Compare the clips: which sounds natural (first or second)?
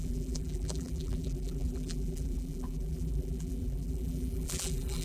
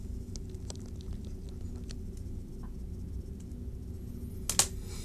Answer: second